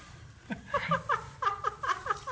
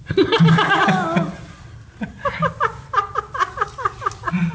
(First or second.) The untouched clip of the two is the second